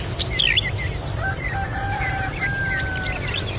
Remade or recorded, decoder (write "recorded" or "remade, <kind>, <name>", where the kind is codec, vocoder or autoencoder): recorded